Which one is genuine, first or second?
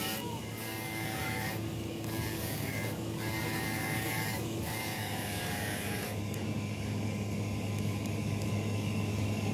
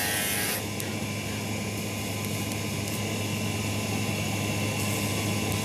second